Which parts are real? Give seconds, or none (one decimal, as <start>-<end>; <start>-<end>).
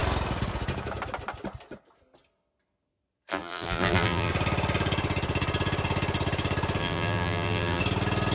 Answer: 0.0-3.3; 4.3-6.8; 7.8-8.3